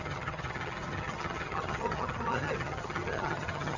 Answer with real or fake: fake